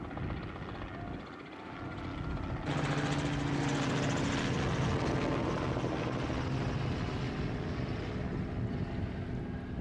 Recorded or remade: recorded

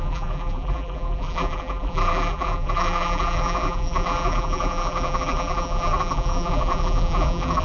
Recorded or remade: remade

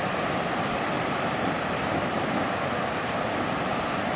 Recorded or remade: recorded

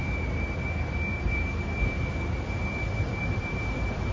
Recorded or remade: remade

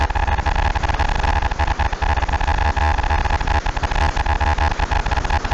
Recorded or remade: recorded